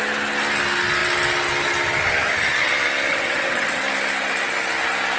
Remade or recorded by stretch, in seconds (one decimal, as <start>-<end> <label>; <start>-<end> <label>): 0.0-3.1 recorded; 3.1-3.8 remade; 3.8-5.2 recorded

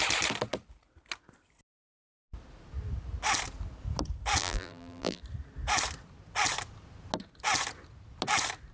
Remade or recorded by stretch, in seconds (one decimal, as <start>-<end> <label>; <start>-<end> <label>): 0.0-4.4 recorded; 4.4-5.2 remade; 5.2-8.7 recorded

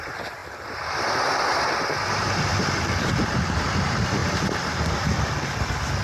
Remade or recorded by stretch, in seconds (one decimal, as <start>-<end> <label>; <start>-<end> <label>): 0.0-4.2 recorded; 4.2-4.8 remade; 4.8-6.0 recorded

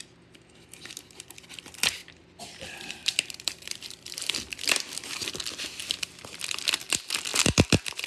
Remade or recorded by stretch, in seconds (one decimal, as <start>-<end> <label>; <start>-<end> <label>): 0.0-2.0 recorded; 2.0-5.3 remade; 5.3-5.8 recorded; 5.8-6.4 remade; 6.4-8.1 recorded

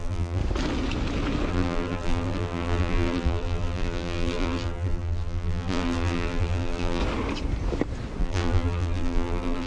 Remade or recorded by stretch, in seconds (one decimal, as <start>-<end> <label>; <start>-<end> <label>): 0.0-0.4 remade; 0.4-1.5 recorded; 1.5-7.0 remade; 7.0-8.2 recorded; 8.2-9.7 remade